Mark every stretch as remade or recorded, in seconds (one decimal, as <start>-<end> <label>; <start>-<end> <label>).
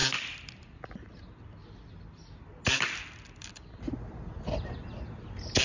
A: 0.0-5.6 recorded